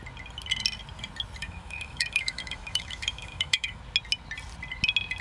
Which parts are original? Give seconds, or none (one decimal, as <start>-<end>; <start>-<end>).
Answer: 0.0-1.4; 3.8-5.2